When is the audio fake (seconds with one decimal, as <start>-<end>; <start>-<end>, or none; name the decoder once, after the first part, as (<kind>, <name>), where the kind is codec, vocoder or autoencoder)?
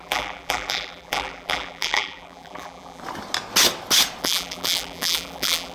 0.0-3.0 (vocoder, BigVGAN v2); 4.2-5.7